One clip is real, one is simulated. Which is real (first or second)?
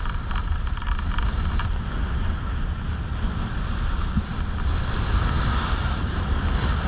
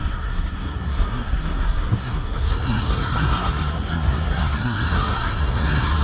first